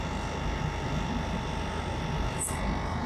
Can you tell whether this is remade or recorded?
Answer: recorded